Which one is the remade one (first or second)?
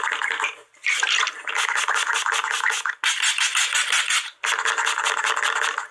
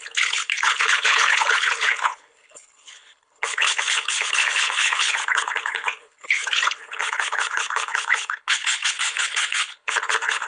second